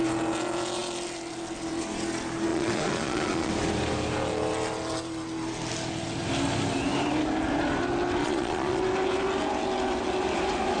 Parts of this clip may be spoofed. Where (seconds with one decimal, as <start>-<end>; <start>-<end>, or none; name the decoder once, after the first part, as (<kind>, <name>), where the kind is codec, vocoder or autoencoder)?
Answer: 2.5-3.5 (vocoder, Vocos); 8.2-8.8

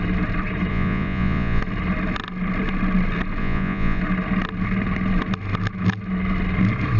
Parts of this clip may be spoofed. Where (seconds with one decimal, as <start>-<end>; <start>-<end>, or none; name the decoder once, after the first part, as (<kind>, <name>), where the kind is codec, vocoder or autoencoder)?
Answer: 0.7-1.6 (vocoder, Vocos); 3.4-4.0

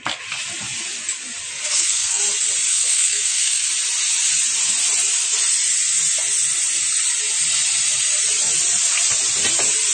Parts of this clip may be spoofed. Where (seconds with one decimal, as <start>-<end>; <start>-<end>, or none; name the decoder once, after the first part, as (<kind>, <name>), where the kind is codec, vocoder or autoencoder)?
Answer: 1.7-2.2 (codec, SNAC); 2.7-3.7

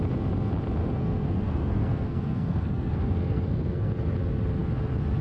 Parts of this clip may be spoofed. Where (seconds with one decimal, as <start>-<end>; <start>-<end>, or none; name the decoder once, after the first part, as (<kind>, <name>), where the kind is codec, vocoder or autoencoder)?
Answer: 0.8-3.9 (codec, SNAC)